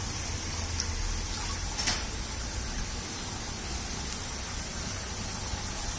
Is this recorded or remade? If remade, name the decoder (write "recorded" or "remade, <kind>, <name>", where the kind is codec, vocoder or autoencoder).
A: recorded